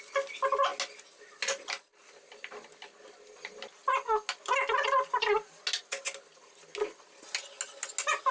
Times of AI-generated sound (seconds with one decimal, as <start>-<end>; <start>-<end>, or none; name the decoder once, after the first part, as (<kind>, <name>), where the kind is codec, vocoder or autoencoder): none